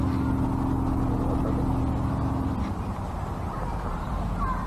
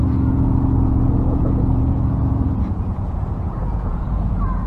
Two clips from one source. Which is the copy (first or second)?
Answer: second